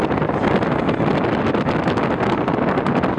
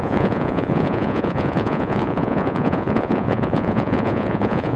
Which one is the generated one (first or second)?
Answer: second